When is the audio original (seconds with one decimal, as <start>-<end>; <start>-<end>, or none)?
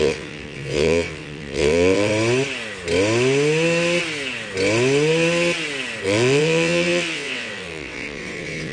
2.1-6.0